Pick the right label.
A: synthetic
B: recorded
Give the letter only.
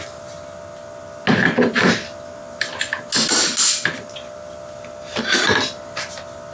B